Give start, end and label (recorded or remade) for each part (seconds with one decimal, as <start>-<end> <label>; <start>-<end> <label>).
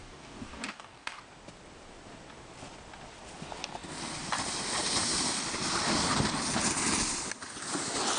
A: 0.0-1.2 remade; 1.2-8.2 recorded